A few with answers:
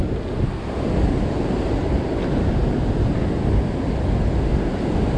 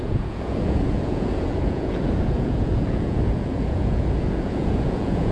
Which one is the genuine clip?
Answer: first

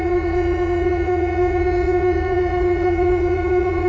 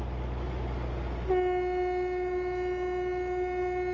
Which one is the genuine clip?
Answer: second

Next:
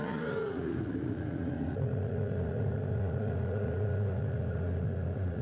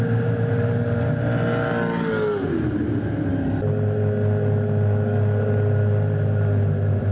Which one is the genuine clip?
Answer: second